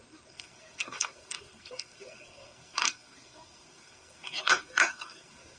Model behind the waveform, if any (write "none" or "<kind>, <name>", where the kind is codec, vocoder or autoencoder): codec, SNAC